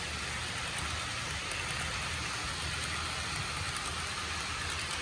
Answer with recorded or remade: recorded